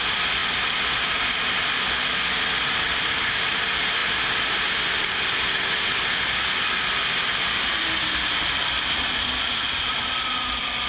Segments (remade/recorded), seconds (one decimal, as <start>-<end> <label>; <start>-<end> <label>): 0.0-10.9 recorded